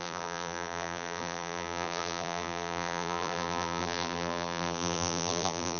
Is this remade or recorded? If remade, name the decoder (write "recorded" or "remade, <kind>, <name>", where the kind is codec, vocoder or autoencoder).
remade, vocoder, BigVGAN v2